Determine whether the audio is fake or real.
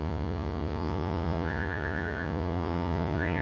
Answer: fake